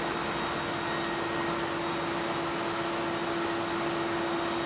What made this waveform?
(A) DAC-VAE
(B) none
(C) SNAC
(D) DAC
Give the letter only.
B